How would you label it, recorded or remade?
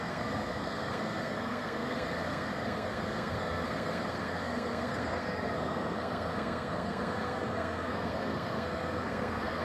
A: remade